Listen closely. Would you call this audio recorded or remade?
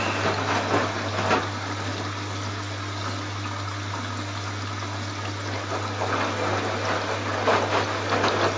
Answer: recorded